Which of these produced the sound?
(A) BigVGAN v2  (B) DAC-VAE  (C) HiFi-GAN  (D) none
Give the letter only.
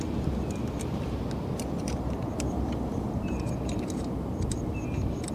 A